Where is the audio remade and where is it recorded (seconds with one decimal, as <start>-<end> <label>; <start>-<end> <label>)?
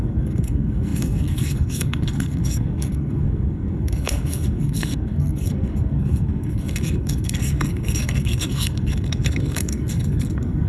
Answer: 0.0-10.7 remade